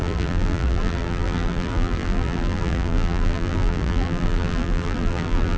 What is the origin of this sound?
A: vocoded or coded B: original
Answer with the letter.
A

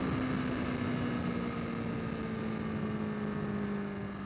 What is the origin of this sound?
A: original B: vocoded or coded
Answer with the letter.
A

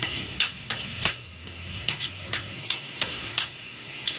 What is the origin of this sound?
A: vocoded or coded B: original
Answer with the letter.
A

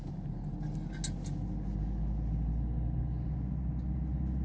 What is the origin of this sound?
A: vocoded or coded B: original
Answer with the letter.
B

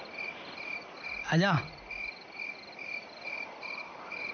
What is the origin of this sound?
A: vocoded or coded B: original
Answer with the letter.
B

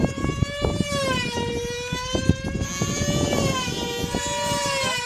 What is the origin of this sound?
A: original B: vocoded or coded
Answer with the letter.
A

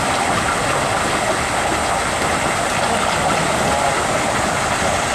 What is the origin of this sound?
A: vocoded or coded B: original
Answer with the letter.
B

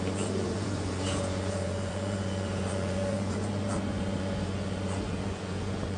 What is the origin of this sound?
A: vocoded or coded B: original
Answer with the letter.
A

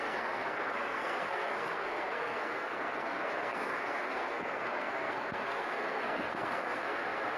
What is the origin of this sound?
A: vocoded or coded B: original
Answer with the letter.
A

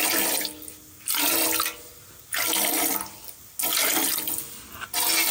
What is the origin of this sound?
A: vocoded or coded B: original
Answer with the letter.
B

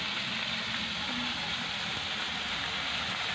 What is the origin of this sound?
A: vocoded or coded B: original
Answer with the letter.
B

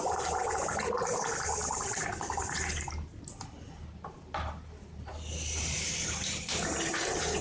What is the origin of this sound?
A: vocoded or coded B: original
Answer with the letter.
B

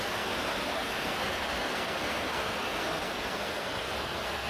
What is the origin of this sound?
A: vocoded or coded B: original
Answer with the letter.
A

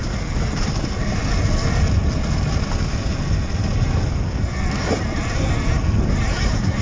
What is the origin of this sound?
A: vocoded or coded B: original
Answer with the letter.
B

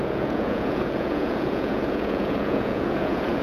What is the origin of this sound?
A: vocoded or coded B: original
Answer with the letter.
A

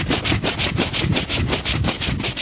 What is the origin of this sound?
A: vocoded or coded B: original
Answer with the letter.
B